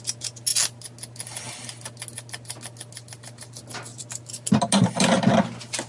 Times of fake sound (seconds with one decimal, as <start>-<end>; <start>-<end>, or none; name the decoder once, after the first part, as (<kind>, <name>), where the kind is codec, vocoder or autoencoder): none